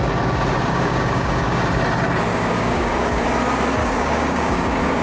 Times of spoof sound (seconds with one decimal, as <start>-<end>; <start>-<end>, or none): 0.7-1.6; 2.3-3.2; 3.8-5.0